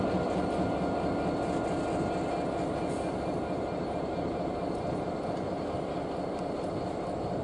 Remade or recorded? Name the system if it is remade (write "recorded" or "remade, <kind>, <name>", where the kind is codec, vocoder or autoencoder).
recorded